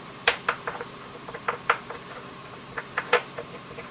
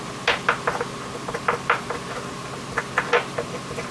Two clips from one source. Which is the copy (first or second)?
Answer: first